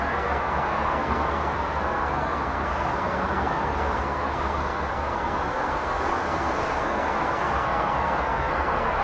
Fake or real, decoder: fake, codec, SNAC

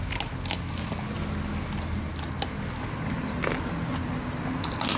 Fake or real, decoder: real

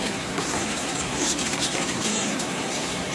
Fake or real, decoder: fake, codec, SNAC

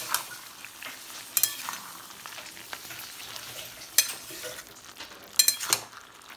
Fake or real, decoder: real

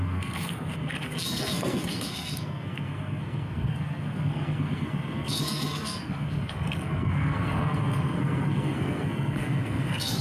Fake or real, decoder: fake, codec, SNAC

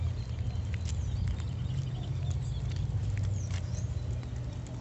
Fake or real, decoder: real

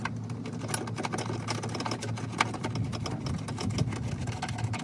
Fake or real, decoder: real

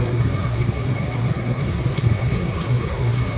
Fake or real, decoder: fake, codec, SNAC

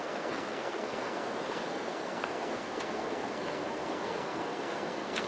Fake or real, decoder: fake, codec, SNAC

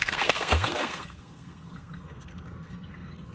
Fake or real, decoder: fake, codec, SNAC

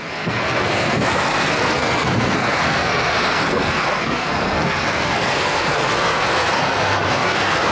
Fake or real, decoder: fake, codec, SNAC